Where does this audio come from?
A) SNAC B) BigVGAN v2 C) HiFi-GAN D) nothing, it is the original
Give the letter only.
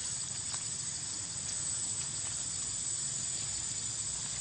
D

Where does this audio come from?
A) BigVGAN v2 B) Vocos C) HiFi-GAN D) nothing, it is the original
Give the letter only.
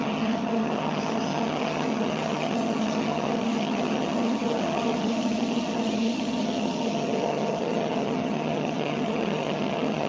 C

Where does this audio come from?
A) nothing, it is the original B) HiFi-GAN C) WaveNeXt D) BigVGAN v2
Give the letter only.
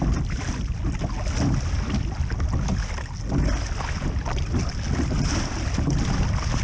A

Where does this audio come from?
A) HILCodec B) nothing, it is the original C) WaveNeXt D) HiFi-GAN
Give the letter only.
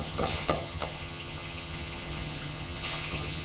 D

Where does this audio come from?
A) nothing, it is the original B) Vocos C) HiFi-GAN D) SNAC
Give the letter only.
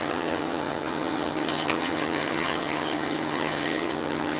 C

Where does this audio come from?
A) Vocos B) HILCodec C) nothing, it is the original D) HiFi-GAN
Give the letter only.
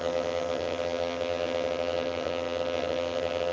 D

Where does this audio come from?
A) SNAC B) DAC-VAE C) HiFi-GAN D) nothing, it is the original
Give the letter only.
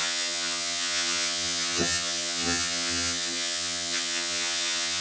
C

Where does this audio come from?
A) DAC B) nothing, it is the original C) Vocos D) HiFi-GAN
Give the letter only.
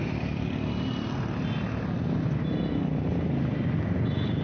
B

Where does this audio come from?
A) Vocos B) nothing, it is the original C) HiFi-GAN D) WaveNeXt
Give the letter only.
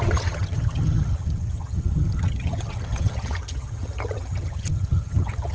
C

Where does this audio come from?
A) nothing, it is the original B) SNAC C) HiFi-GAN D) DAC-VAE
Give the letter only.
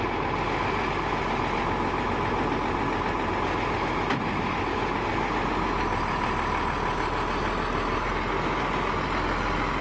A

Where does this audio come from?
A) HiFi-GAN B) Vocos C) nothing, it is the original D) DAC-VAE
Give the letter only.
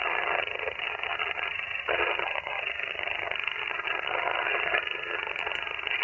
A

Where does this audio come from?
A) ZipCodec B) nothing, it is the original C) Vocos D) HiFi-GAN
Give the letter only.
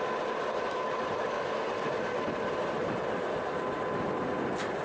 B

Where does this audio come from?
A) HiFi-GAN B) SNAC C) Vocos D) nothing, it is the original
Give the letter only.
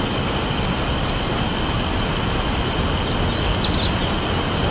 D